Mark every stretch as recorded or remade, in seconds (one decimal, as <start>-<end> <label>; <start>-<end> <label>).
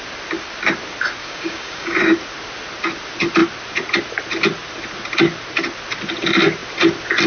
0.0-1.2 recorded; 1.2-2.0 remade; 2.0-7.3 recorded